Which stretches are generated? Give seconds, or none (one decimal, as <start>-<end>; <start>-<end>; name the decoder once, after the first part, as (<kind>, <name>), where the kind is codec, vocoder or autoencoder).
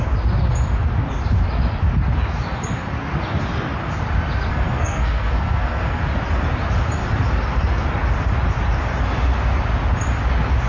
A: 4.5-6.0 (codec, SNAC)